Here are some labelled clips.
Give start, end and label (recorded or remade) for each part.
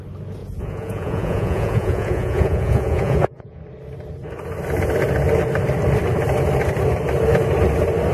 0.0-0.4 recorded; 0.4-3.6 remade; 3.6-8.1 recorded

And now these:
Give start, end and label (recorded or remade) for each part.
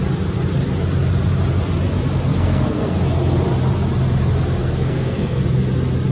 0.0-2.3 recorded; 2.3-3.0 remade; 3.0-4.6 recorded; 4.6-5.4 remade; 5.4-6.1 recorded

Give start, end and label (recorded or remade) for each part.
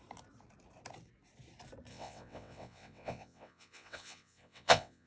0.0-1.9 recorded; 1.9-5.1 remade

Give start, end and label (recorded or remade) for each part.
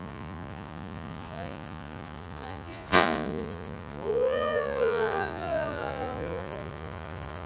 0.0-7.5 remade